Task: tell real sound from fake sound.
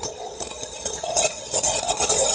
fake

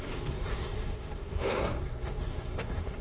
fake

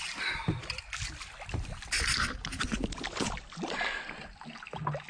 real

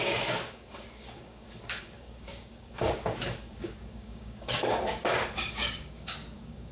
fake